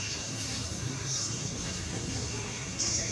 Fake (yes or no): yes